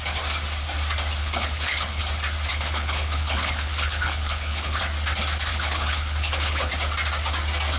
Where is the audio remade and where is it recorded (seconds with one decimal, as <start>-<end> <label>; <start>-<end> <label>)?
0.0-1.2 recorded; 1.2-2.0 remade; 2.0-2.5 recorded; 2.5-4.8 remade; 4.8-5.5 recorded; 5.5-6.7 remade; 6.7-7.8 recorded